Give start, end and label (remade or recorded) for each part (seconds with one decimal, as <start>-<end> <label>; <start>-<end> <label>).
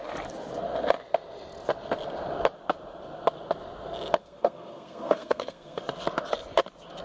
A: 0.0-4.2 recorded; 4.2-5.8 remade; 5.8-7.0 recorded